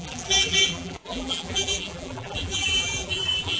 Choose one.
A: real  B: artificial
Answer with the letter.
B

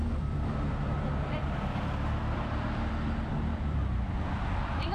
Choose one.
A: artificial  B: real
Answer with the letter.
A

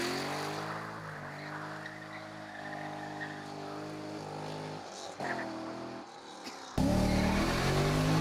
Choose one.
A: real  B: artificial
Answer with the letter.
A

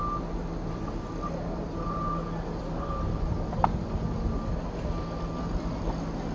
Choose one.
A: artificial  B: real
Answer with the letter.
B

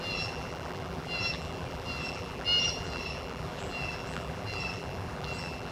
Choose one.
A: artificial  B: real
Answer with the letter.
A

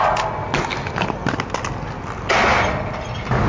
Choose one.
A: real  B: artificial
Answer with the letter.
A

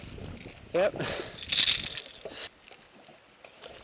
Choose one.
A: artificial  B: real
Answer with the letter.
B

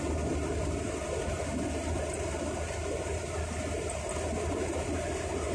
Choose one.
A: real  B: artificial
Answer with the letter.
A